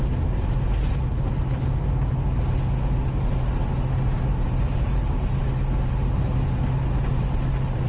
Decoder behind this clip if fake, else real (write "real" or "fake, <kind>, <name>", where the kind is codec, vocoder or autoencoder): real